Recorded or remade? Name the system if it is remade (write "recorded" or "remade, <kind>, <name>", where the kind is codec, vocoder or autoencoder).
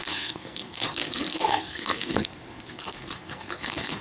remade, codec, SNAC